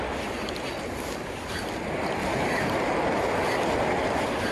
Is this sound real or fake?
real